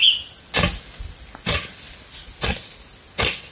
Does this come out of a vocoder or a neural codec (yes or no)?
no